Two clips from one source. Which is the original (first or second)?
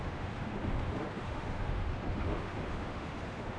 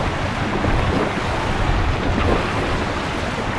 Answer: second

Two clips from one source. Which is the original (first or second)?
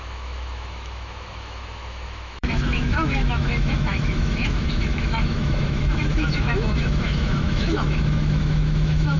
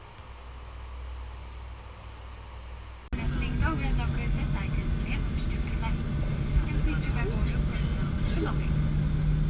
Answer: second